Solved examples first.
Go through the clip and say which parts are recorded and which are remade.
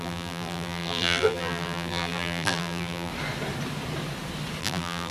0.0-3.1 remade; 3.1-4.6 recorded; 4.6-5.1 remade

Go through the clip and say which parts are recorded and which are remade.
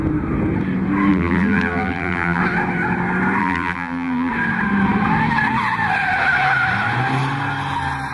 0.0-1.1 recorded; 1.1-2.4 remade; 2.4-3.4 recorded; 3.4-4.3 remade; 4.3-8.1 recorded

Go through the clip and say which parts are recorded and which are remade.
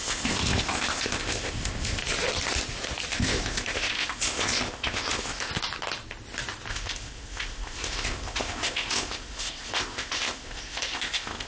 0.0-2.0 remade; 2.0-3.1 recorded; 3.1-5.5 remade; 5.5-6.7 recorded; 6.7-11.5 remade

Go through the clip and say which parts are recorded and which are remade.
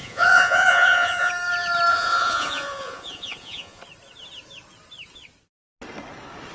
0.0-1.3 remade; 1.3-1.9 recorded; 1.9-3.8 remade; 3.8-6.5 recorded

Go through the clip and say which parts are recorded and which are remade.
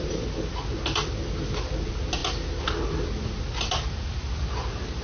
0.0-5.0 recorded